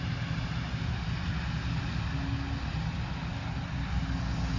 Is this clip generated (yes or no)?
no